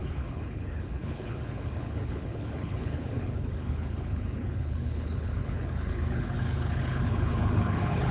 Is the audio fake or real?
fake